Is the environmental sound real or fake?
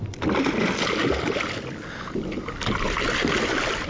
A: real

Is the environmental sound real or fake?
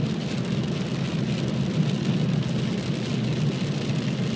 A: real